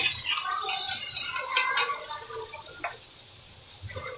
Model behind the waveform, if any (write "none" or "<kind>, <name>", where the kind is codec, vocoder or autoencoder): none